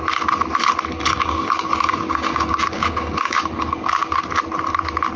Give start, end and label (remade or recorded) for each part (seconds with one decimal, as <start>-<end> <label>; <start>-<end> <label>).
0.0-1.1 recorded; 1.1-4.2 remade; 4.2-5.2 recorded